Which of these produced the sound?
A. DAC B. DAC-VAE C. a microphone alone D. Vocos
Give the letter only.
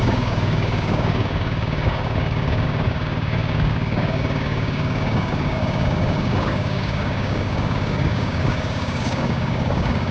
A